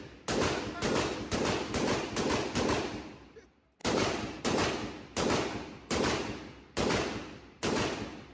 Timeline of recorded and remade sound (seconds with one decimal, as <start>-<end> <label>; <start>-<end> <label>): 0.0-3.8 recorded; 3.8-4.4 remade; 4.4-8.3 recorded